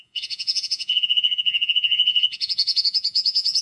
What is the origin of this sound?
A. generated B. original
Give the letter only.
A